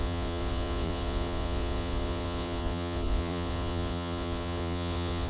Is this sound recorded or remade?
remade